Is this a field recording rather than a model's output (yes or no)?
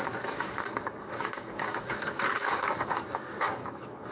no